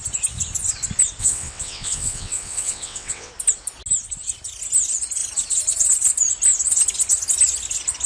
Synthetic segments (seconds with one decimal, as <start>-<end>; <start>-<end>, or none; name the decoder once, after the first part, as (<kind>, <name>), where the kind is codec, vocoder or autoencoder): 1.2-3.3 (vocoder, WaveNeXt)